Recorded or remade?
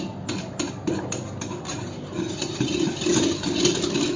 recorded